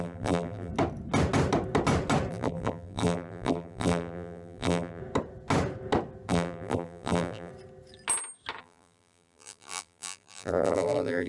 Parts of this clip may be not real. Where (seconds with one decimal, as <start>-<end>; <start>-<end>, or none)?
0.0-0.7; 2.3-5.0; 6.3-7.5; 8.6-11.3